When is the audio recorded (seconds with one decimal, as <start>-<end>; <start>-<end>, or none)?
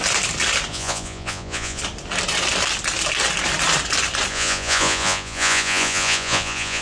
0.0-0.7; 1.8-4.3